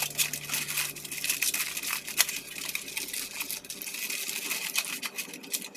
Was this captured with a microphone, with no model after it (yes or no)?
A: yes